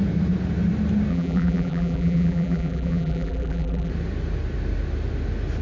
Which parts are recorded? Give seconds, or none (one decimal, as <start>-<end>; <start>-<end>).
0.0-1.1; 3.9-5.6

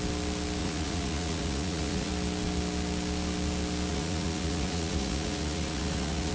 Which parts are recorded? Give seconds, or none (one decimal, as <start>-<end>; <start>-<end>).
0.0-0.6; 2.1-3.9

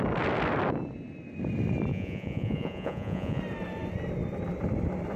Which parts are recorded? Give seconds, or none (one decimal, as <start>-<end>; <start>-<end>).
0.0-1.9; 3.4-5.2

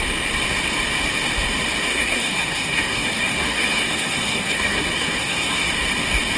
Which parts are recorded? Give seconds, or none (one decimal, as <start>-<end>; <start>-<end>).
0.0-1.9; 5.7-6.4

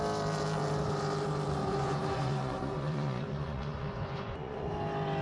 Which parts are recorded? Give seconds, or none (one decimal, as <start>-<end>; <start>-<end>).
0.0-1.6; 4.7-5.2

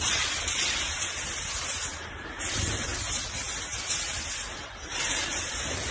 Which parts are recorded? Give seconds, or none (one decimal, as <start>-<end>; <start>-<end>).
2.9-4.6

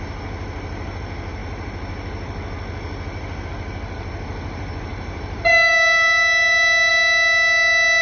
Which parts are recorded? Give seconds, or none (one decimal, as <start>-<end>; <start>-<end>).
0.0-4.9; 6.9-8.0

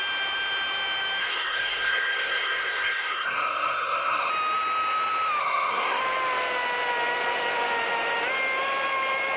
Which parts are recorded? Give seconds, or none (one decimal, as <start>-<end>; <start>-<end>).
0.0-1.2; 4.3-5.4; 6.0-9.4